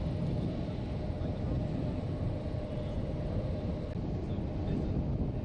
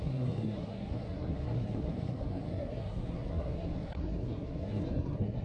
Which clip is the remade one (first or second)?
second